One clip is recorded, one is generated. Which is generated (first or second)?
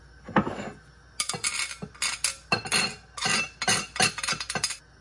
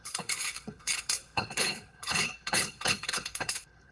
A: second